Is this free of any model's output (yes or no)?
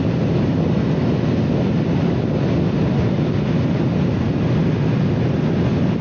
yes